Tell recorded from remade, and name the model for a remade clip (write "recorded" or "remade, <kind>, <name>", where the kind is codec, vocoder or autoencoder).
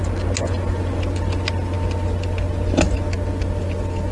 recorded